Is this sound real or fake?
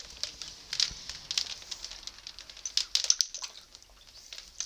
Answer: real